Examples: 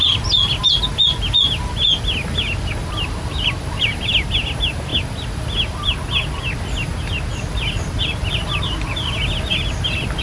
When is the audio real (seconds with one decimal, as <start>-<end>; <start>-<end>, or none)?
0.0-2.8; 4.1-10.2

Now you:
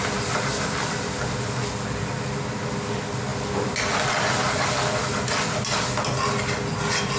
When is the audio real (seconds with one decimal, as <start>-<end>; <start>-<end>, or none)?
0.0-7.2

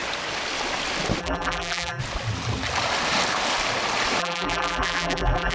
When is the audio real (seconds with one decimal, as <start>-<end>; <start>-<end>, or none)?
0.0-1.2; 2.0-4.2

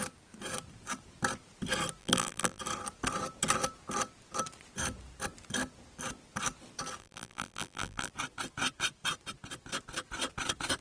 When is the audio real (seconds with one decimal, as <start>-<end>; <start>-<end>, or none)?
0.0-2.0; 2.6-7.0; 8.1-10.8

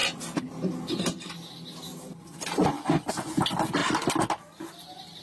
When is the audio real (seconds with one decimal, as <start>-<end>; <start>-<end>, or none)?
0.0-5.2

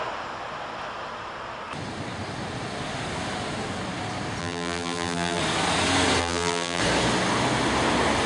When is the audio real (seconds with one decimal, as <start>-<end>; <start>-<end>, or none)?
0.0-4.4; 5.4-6.2; 6.8-8.3

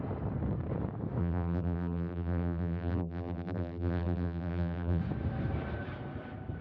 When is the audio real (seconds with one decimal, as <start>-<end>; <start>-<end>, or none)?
0.0-1.2; 5.0-6.6